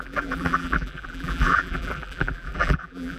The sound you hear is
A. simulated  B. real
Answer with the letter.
A